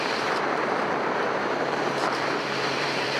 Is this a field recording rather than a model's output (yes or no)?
no